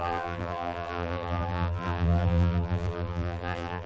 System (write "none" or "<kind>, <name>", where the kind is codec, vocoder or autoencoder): vocoder, BigVGAN v2